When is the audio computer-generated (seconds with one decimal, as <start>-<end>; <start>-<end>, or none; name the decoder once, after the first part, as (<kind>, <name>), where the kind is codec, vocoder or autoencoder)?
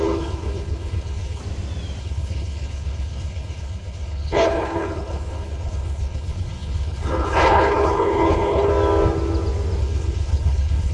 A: 0.0-1.4 (codec, HILCodec); 2.0-8.7; 9.8-10.9